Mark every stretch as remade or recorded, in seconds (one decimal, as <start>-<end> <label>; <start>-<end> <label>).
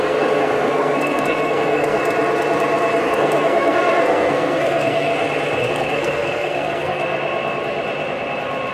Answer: 0.0-2.0 remade; 2.0-3.0 recorded; 3.0-5.1 remade; 5.1-5.6 recorded; 5.6-7.0 remade; 7.0-8.7 recorded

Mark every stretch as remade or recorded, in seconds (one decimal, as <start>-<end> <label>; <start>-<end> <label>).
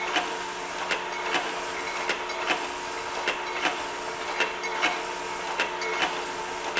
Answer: 0.0-6.8 recorded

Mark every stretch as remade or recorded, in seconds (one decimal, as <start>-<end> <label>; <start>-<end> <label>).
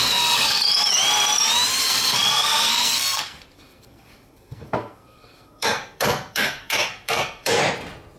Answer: 0.0-0.6 remade; 0.6-1.8 recorded; 1.8-7.6 remade; 7.6-8.2 recorded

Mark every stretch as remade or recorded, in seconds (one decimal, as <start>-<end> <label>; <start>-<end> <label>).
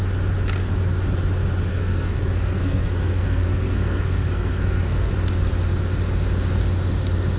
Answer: 0.0-1.7 recorded; 1.7-5.1 remade; 5.1-7.4 recorded